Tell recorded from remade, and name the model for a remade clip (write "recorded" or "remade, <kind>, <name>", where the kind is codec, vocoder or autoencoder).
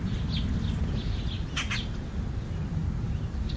recorded